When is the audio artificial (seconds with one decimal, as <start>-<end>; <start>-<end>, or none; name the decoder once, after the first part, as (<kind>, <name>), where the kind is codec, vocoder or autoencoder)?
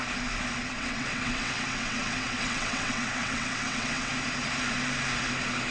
0.7-4.1 (vocoder, WaveNeXt)